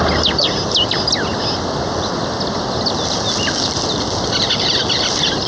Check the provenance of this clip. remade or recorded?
recorded